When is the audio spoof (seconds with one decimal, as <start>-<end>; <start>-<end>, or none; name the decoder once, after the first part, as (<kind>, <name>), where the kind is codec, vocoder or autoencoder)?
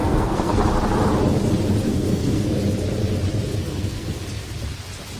0.0-0.6 (codec, SNAC); 1.8-2.6; 3.6-4.5